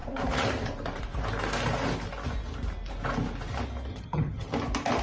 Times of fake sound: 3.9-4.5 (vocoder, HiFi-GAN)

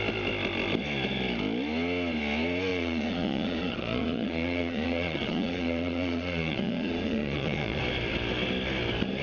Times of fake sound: 2.7-7.8 (vocoder, Vocos)

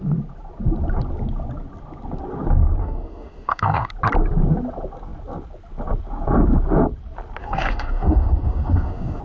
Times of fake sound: 2.8-3.9 (autoencoder, DAC-VAE); 7.4-9.2

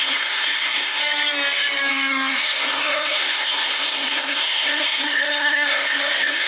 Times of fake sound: 0.0-1.0 (codec, SNAC); 1.9-6.5

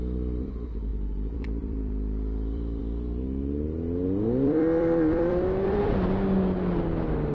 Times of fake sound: 0.9-2.8 (vocoder, BigVGAN v2); 4.0-5.9

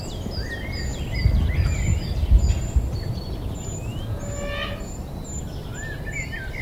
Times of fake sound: none

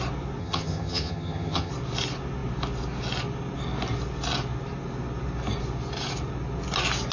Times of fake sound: 0.4-1.7 (vocoder, HiFi-GAN)